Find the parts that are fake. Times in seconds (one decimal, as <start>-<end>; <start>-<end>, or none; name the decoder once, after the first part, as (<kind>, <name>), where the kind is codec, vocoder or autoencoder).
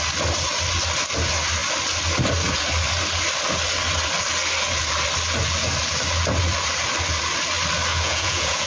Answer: 7.9-8.7 (vocoder, Vocos)